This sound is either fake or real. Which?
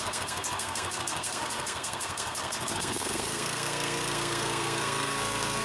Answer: fake